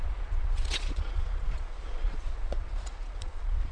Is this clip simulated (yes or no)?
yes